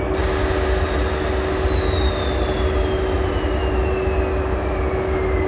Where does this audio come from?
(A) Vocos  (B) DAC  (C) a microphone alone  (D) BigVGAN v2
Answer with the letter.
C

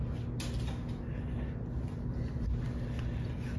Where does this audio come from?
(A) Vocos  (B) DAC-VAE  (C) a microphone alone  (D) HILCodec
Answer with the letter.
C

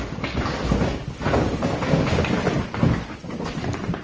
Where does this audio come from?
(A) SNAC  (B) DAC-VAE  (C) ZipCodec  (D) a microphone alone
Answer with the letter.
D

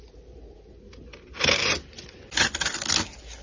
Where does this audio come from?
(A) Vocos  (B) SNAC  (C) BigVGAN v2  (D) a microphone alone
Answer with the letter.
D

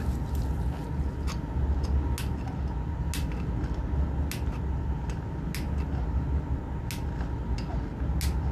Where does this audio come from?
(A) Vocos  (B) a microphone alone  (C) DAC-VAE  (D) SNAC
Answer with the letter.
B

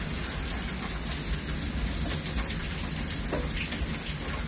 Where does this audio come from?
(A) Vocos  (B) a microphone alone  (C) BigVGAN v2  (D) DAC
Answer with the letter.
B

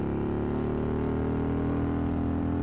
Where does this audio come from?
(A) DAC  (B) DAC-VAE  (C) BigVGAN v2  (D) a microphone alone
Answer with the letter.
D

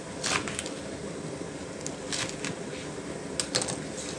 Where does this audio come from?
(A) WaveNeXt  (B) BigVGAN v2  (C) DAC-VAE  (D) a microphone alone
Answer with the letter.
D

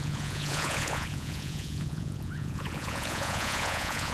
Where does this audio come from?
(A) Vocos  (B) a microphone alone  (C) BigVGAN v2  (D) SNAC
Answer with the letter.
A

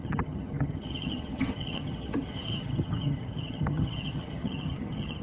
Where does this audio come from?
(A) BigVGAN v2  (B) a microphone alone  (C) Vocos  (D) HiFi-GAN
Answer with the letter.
D